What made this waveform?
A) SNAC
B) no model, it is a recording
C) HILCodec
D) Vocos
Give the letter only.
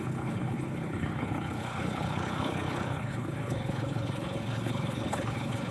C